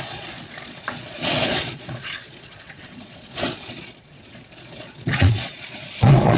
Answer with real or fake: fake